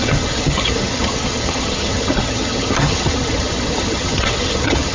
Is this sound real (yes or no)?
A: no